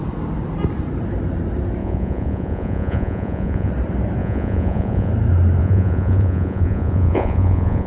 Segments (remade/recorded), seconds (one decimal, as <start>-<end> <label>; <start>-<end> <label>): 0.0-1.8 recorded; 1.8-3.7 remade; 3.7-4.2 recorded; 4.2-5.1 remade; 5.1-5.6 recorded; 5.6-7.9 remade